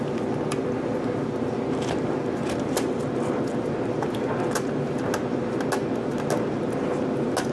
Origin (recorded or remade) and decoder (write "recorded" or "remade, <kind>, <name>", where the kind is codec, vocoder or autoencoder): recorded